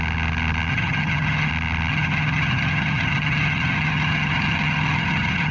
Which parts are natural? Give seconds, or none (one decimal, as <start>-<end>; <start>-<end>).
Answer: 0.0-0.7; 1.5-1.9

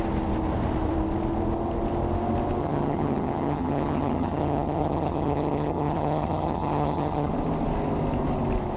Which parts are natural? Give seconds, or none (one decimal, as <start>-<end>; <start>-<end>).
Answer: 0.0-2.6; 7.3-8.8